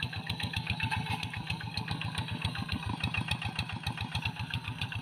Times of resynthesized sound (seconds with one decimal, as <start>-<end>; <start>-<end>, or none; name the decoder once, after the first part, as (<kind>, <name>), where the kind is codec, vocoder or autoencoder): 0.0-2.9 (codec, SNAC); 4.2-5.0